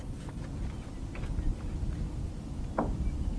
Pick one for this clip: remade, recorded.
recorded